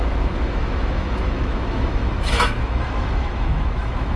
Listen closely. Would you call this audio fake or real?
fake